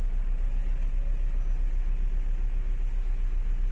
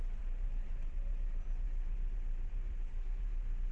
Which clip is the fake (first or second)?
second